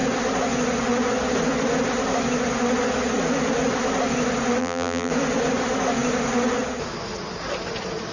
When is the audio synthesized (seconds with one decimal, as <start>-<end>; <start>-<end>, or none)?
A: 4.6-5.1